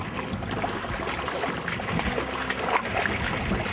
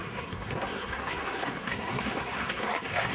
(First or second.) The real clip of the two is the first